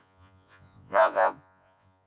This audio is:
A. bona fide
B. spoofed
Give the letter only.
B